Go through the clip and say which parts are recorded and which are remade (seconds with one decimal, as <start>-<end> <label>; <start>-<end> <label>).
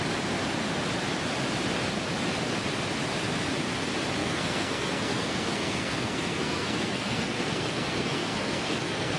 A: 0.0-4.2 recorded; 4.2-9.2 remade